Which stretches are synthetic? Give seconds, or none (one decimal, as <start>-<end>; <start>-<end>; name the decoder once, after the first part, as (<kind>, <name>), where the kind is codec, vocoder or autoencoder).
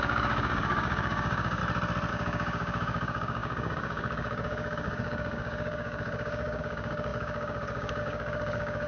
0.0-1.6 (codec, DAC); 2.1-8.9